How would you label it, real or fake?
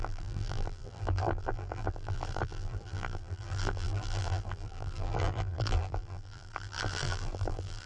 fake